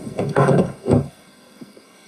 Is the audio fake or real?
fake